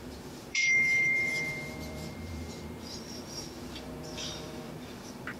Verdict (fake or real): fake